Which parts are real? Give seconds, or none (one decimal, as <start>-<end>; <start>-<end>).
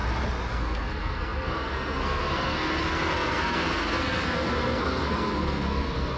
0.0-0.5